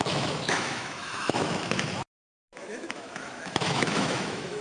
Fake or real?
fake